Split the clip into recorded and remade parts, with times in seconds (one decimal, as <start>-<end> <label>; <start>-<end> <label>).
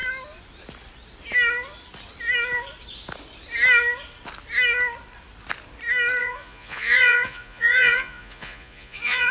0.0-6.2 recorded; 6.2-9.3 remade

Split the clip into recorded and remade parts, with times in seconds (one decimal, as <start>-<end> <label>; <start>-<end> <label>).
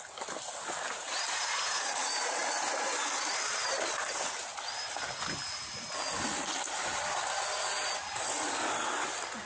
0.0-9.5 recorded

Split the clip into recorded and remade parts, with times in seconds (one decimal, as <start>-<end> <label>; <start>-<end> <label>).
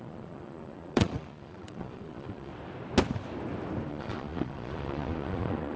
0.0-2.5 remade; 2.5-3.9 recorded; 3.9-5.8 remade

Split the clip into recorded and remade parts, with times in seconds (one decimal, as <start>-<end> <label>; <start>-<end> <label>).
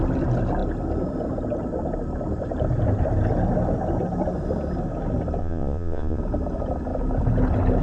0.0-5.4 recorded; 5.4-6.2 remade; 6.2-7.8 recorded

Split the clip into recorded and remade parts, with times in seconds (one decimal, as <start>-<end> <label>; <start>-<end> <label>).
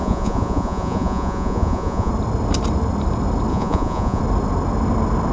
0.0-2.1 remade; 2.1-3.5 recorded; 3.5-4.2 remade; 4.2-5.3 recorded